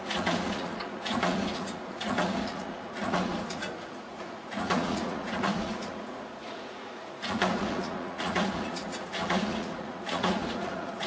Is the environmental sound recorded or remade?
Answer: remade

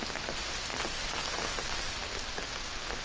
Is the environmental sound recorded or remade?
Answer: recorded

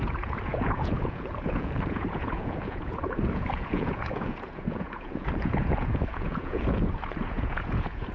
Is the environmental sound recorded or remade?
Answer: remade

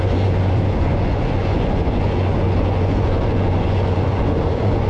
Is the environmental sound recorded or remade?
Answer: remade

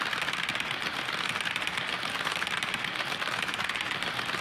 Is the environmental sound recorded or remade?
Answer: recorded